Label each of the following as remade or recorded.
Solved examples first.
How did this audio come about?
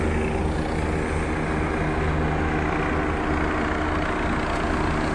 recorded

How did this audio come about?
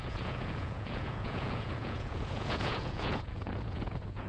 remade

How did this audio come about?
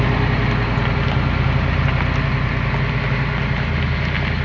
recorded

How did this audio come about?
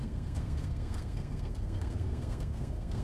remade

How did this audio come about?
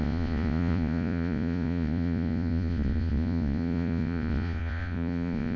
remade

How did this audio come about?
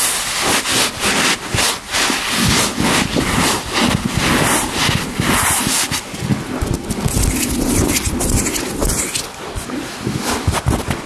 recorded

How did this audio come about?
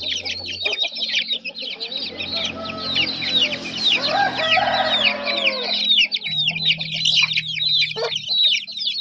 recorded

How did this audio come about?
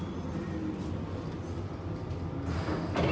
recorded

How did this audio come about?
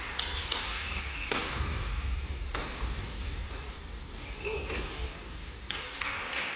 remade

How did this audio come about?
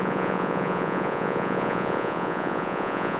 remade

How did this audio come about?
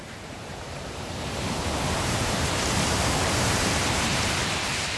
remade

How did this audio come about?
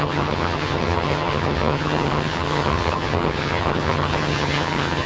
remade